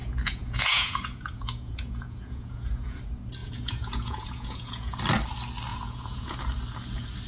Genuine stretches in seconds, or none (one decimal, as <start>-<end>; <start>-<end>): 3.0-3.4; 5.0-5.7; 6.4-7.3